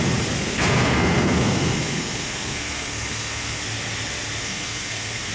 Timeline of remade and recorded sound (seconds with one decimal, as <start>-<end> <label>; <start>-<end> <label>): 0.0-0.4 recorded; 0.4-3.6 remade; 3.6-4.4 recorded; 4.4-5.3 remade